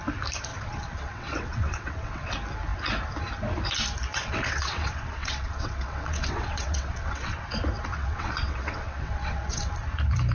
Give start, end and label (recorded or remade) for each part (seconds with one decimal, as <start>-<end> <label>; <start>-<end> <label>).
0.0-0.5 recorded; 0.5-2.3 remade; 2.3-4.1 recorded; 4.1-7.4 remade; 7.4-7.9 recorded; 7.9-9.7 remade; 9.7-10.3 recorded